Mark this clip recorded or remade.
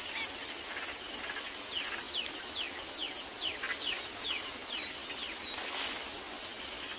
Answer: recorded